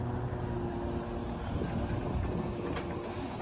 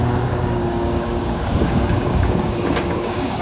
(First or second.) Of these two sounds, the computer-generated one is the second